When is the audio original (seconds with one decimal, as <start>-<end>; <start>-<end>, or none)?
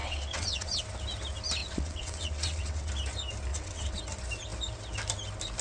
0.8-1.6; 2.9-3.5; 4.0-5.6